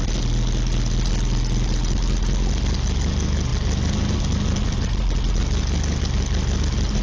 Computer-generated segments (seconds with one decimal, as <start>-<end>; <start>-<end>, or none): none